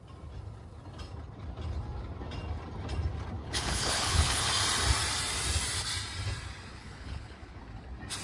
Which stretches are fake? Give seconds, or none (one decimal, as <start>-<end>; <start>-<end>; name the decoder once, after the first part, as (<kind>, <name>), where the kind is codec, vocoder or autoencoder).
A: 3.4-4.5 (codec, HILCodec); 6.7-7.6